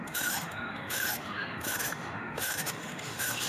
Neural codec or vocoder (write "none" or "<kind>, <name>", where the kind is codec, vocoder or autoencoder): autoencoder, DAC-VAE